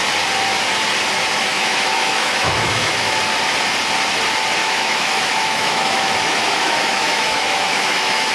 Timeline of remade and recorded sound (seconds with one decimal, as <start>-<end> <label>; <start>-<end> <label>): 0.0-1.5 recorded; 1.5-3.2 remade; 3.2-4.6 recorded; 4.6-8.3 remade